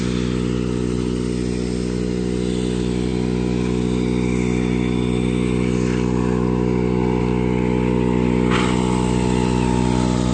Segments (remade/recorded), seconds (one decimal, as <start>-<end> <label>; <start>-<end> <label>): 0.0-10.3 recorded